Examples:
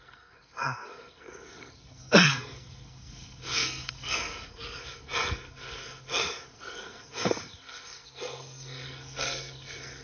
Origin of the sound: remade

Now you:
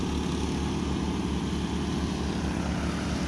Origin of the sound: recorded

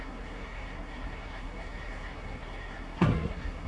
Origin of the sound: remade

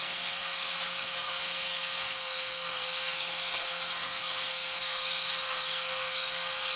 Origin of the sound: remade